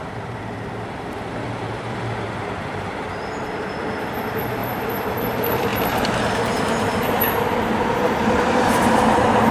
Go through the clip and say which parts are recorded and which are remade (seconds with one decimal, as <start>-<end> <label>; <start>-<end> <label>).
0.0-5.7 remade; 5.7-7.9 recorded; 7.9-9.5 remade